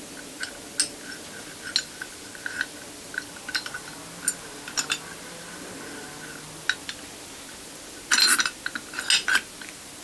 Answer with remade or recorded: recorded